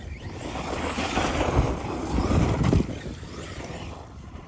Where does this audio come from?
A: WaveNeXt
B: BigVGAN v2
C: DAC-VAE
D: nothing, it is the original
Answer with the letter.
B